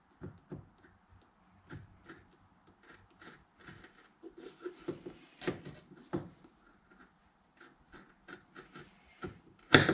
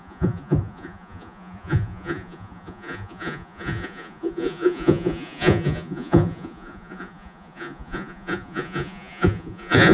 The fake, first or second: second